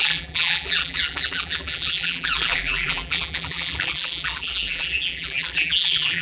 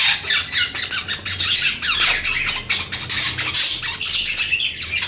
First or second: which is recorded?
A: second